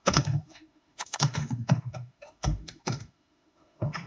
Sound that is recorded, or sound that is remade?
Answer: remade